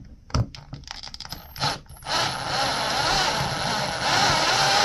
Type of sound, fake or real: real